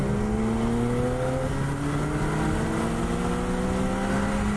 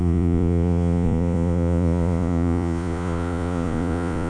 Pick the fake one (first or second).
second